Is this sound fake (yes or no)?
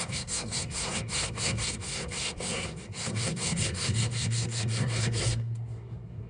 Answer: yes